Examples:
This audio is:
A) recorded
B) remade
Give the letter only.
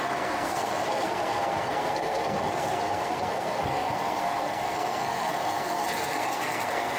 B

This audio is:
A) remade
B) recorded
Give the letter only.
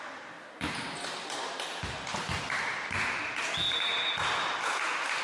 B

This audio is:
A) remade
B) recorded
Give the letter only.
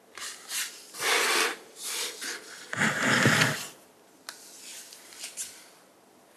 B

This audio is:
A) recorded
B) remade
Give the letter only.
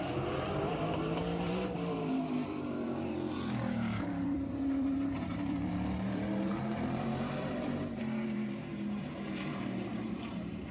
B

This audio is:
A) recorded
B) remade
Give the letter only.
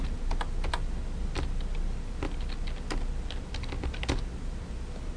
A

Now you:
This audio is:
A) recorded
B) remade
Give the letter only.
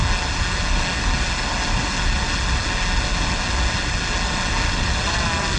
A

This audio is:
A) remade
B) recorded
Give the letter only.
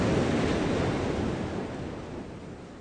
B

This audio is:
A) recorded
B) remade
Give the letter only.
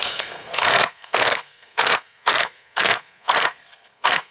B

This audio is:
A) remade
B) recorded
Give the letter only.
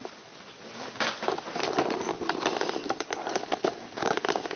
B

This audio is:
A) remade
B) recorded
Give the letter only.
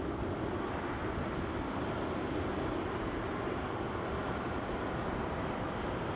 B